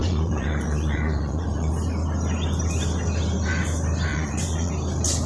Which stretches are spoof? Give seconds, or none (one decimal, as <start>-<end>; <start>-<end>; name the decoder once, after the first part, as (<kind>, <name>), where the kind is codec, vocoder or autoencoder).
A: 0.0-1.7 (vocoder, Vocos); 4.1-4.7